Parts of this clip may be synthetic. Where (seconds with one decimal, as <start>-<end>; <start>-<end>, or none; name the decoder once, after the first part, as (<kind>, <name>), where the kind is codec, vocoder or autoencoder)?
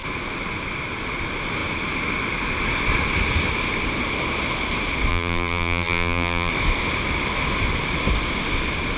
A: 5.1-6.5 (vocoder, BigVGAN v2)